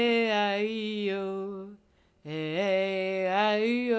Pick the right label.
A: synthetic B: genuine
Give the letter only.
B